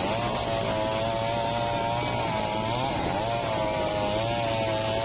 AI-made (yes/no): no